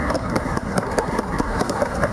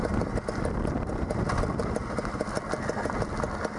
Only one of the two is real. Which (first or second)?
second